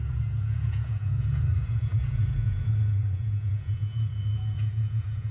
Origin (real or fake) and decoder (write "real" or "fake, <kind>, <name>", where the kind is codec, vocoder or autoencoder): fake, vocoder, Vocos